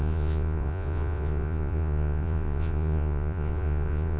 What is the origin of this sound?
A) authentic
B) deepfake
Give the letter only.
B